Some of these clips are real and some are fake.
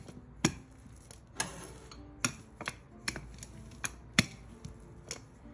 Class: real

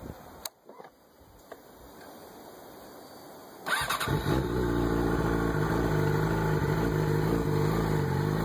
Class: real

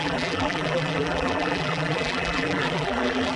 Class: fake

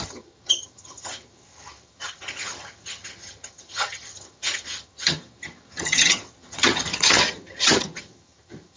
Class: fake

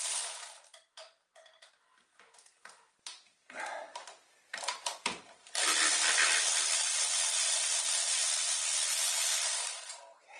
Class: fake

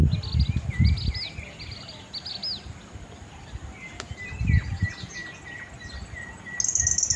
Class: real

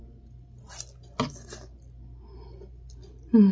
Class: real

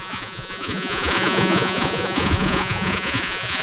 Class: fake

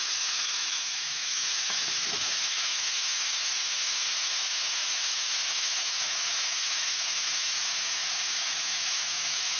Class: fake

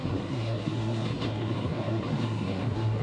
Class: fake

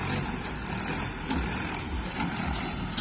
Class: real